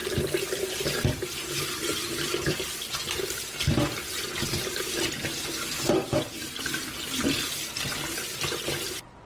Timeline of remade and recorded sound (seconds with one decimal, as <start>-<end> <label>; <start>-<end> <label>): 0.0-9.2 recorded